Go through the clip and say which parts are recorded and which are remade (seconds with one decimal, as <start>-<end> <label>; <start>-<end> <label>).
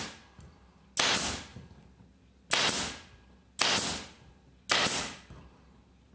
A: 0.0-6.1 recorded